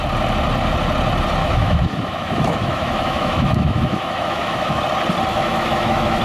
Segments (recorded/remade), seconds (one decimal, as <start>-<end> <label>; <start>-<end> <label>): 0.0-1.4 recorded; 1.4-4.8 remade; 4.8-5.3 recorded; 5.3-6.2 remade